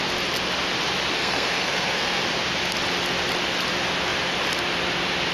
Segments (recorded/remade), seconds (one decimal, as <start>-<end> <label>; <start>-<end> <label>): 0.0-1.2 recorded; 1.2-2.2 remade; 2.2-5.3 recorded